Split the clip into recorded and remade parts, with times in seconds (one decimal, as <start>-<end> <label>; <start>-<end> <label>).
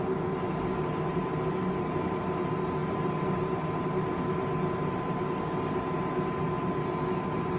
0.0-7.6 recorded